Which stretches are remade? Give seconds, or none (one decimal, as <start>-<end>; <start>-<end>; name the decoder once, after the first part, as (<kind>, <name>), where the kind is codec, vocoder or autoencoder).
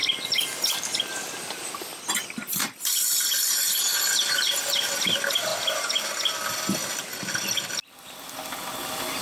none